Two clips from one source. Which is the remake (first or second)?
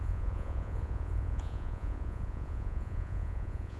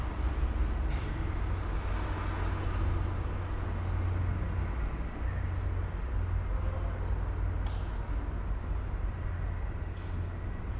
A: first